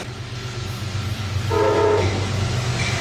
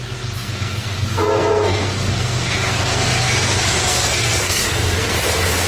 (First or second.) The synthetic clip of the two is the second